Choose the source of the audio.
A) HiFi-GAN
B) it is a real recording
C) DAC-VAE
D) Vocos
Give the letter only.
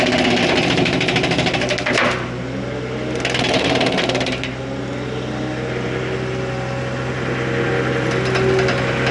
B